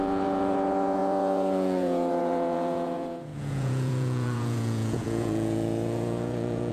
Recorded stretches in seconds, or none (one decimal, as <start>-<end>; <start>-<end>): none